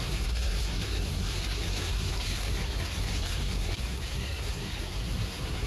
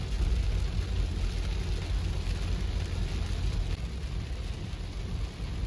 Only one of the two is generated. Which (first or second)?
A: first